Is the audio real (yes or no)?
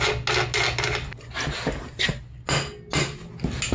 yes